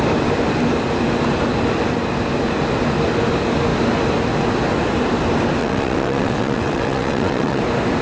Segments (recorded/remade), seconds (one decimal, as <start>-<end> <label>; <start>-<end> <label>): 0.0-5.6 recorded; 5.6-7.6 remade; 7.6-8.0 recorded